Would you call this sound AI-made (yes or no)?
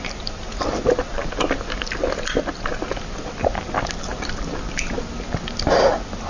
no